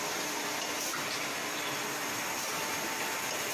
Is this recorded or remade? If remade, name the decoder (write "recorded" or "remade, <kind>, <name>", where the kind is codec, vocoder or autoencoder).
recorded